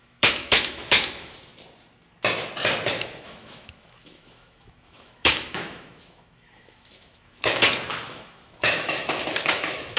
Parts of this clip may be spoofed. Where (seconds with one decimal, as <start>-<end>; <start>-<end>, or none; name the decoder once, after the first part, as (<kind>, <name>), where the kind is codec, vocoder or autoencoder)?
0.0-1.5 (autoencoder, DAC-VAE); 2.9-10.0